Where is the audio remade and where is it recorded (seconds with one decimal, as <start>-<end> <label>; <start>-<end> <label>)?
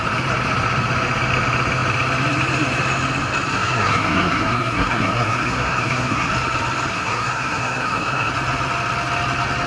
0.0-3.5 recorded; 3.5-6.3 remade; 6.3-6.9 recorded; 6.9-8.3 remade; 8.3-9.7 recorded